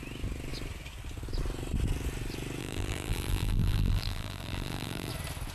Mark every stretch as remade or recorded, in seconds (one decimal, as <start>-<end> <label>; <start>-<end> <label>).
0.0-2.6 recorded; 2.6-5.1 remade; 5.1-5.5 recorded